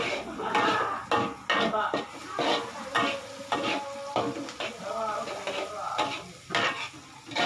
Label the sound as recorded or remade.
recorded